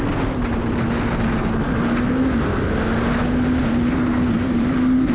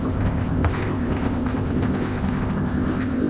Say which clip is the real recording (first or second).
first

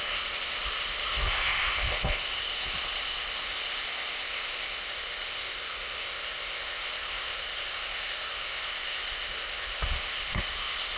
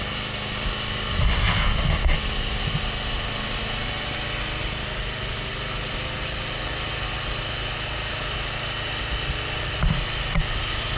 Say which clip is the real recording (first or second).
second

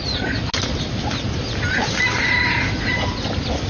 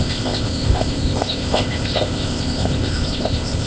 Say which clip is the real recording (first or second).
first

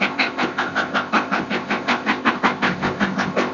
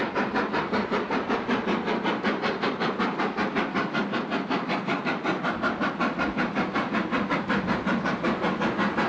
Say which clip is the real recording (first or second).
second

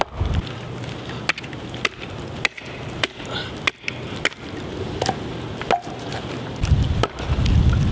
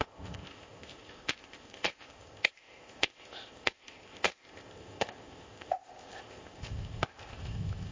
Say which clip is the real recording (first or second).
first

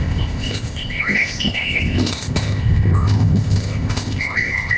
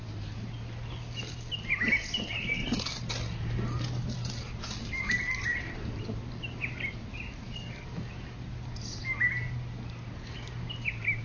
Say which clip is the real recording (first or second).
second